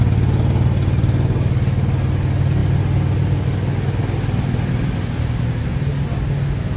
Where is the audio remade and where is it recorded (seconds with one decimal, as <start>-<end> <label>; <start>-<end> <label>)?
0.0-6.8 recorded